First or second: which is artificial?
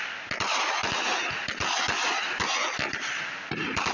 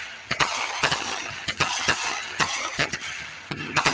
second